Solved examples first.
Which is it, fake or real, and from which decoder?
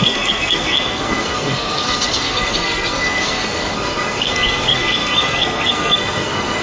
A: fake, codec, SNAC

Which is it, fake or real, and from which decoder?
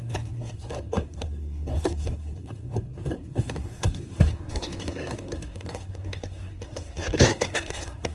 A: fake, codec, SNAC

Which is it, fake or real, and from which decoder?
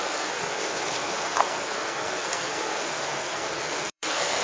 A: fake, codec, SNAC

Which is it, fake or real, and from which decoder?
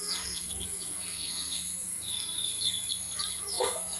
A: fake, codec, SNAC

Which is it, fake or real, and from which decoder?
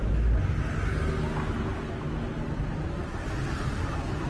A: real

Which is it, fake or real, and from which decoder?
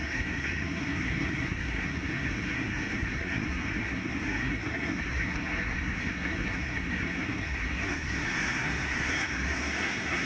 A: fake, codec, SNAC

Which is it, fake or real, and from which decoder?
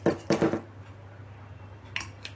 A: real